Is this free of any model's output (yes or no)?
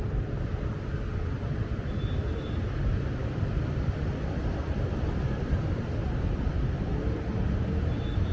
no